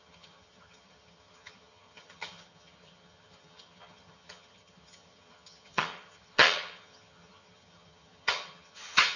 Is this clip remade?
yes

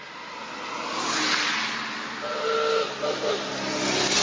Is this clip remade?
no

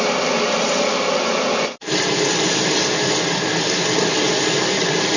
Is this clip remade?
no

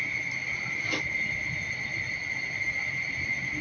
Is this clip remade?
no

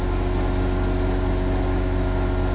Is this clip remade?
no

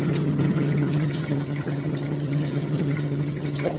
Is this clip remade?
yes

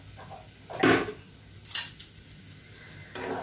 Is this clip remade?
no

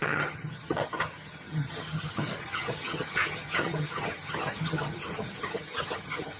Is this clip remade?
yes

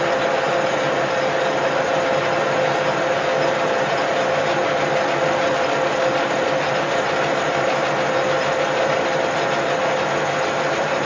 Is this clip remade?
no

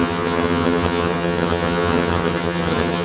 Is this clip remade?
yes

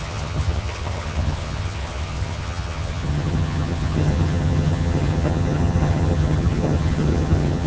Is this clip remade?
yes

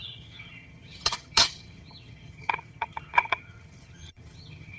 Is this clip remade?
yes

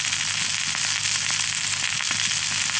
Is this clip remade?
no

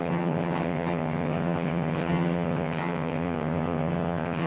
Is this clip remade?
yes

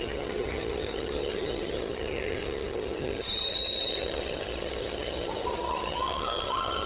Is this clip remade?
yes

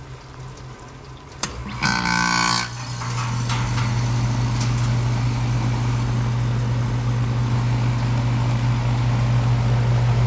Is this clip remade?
no